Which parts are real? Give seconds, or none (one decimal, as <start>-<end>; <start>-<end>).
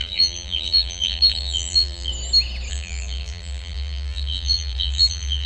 2.1-2.7